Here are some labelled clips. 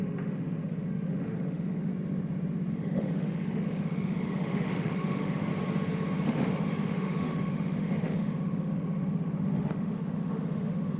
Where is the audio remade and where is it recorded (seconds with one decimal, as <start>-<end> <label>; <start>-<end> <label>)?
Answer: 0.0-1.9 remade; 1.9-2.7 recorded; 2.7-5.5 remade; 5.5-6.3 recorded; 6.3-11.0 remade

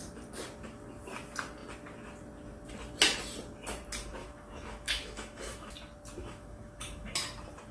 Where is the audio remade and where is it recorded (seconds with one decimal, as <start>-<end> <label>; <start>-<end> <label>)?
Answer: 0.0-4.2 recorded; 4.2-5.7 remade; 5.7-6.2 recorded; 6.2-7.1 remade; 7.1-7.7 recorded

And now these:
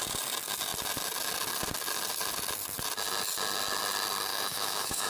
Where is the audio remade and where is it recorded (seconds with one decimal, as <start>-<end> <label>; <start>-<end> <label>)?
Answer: 0.0-4.3 recorded; 4.3-5.1 remade

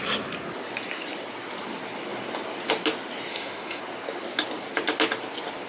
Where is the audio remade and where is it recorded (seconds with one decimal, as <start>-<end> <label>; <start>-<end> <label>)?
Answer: 0.0-3.3 recorded; 3.3-3.8 remade; 3.8-5.7 recorded

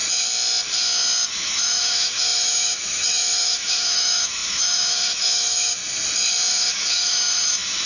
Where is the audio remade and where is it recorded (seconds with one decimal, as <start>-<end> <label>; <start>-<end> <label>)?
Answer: 0.0-1.3 recorded; 1.3-5.8 remade; 5.8-6.5 recorded; 6.5-7.9 remade

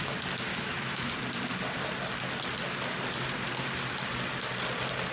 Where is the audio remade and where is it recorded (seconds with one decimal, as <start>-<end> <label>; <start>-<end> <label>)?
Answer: 0.0-0.5 recorded; 0.5-1.1 remade; 1.1-5.1 recorded

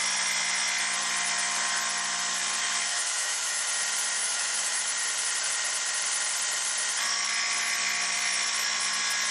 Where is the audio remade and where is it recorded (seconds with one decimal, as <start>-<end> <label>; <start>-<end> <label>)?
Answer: 0.0-2.9 recorded; 2.9-3.7 remade; 3.7-4.2 recorded; 4.2-4.9 remade; 4.9-9.3 recorded